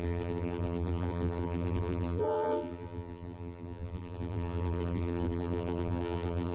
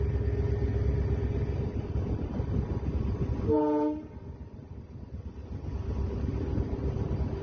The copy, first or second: first